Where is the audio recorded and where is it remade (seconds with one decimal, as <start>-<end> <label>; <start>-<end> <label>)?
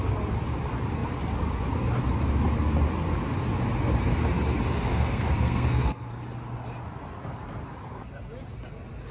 0.0-4.9 recorded; 4.9-6.1 remade; 6.1-9.1 recorded